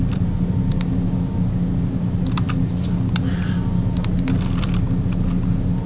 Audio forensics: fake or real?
real